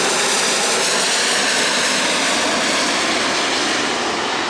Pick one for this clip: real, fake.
real